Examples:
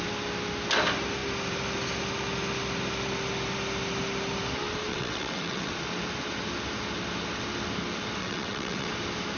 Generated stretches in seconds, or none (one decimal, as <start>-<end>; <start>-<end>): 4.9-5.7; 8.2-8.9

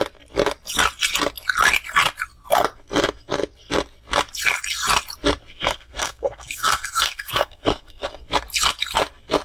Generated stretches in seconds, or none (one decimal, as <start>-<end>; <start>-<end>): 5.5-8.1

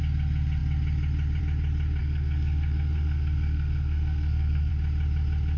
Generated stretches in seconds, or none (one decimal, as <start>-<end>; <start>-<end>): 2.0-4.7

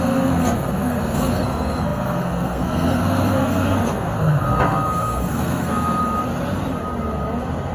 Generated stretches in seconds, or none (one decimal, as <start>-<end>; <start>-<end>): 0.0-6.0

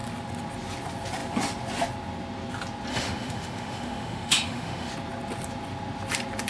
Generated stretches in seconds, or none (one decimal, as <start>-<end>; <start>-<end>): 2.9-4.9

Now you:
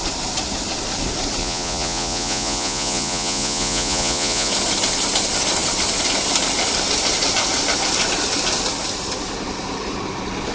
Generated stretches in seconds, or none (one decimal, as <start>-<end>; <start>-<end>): 1.4-4.5

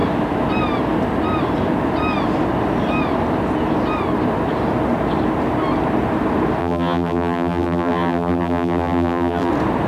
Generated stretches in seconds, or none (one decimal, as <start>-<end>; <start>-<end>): 6.6-9.5

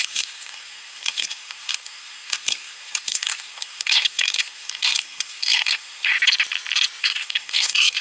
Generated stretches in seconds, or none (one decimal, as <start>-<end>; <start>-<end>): 0.0-6.1; 7.0-8.0